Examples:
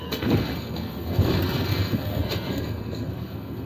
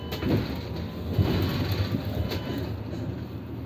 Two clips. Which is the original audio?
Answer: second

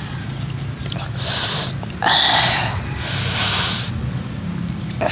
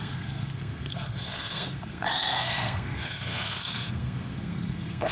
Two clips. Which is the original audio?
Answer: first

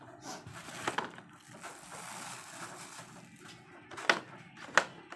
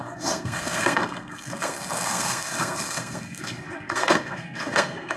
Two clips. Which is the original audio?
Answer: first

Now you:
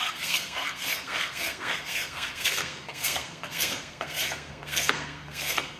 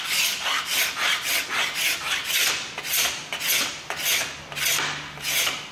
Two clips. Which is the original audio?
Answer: second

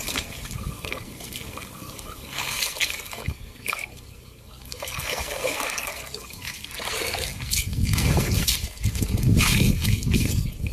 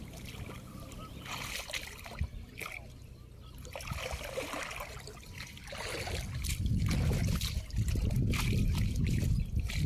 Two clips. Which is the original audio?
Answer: second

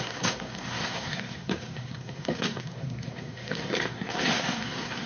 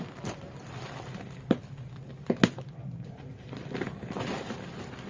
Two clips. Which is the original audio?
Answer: second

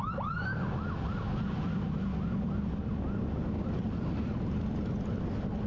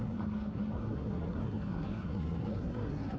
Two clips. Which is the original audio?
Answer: first